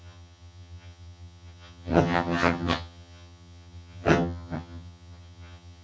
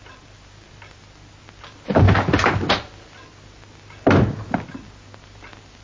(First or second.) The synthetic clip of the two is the first